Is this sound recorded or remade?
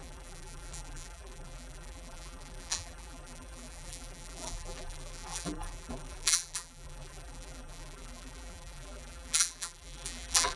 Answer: remade